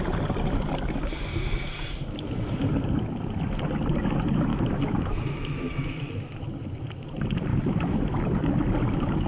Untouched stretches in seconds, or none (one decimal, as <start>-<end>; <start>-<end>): 0.0-4.5; 6.1-7.5; 8.0-9.3